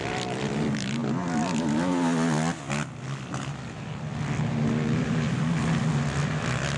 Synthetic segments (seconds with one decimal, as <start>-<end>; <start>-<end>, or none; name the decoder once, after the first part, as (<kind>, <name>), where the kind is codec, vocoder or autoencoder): none

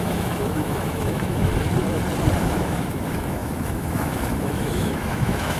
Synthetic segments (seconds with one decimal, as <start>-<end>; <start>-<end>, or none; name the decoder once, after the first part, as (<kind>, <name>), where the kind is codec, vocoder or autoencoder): 0.0-1.5 (autoencoder, DAC-VAE); 2.4-5.6

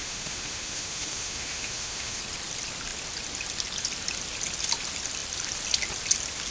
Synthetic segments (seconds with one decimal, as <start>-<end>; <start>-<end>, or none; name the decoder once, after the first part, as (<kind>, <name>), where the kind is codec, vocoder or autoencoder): 0.0-2.2 (autoencoder, DAC-VAE)

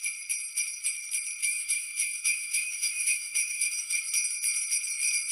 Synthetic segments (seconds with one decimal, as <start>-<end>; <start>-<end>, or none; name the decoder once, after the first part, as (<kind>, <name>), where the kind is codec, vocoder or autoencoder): 1.4-4.0 (autoencoder, DAC-VAE)

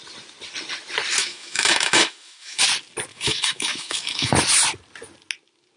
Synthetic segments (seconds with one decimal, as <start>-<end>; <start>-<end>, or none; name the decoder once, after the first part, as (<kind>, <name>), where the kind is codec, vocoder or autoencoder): 1.2-2.6 (autoencoder, DAC-VAE); 3.1-4.3